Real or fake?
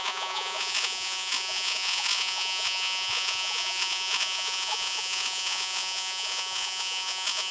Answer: fake